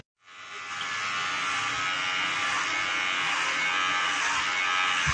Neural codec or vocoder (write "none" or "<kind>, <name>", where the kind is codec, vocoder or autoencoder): none